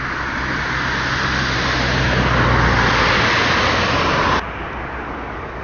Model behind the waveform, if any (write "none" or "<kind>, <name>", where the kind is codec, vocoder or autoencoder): none